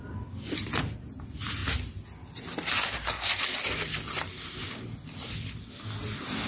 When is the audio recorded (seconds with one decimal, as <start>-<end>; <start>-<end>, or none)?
0.0-6.5